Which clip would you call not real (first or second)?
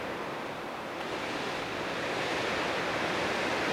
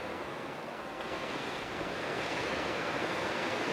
second